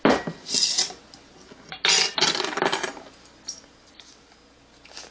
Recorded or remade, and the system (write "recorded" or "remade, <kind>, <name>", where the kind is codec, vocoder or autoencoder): recorded